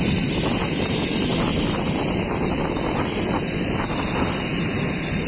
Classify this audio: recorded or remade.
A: recorded